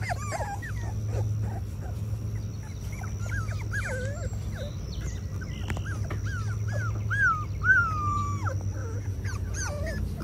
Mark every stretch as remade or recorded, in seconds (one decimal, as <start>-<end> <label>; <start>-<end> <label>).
0.0-8.8 recorded; 8.8-9.7 remade; 9.7-10.2 recorded